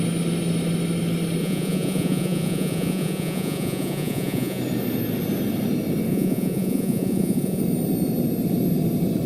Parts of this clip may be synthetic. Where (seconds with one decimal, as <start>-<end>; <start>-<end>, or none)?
1.4-4.6; 6.1-7.6